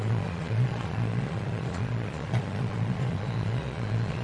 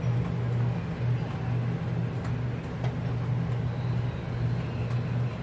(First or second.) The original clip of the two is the second